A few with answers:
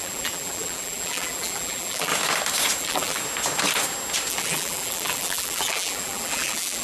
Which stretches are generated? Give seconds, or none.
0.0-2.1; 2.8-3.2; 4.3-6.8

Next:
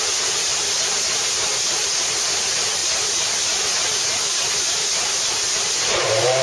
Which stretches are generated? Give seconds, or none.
0.0-2.8; 5.7-6.4

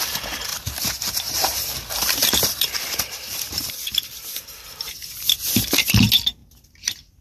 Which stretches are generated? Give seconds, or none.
0.5-3.7

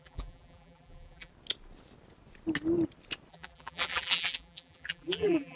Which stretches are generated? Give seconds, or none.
0.0-1.3; 3.3-5.6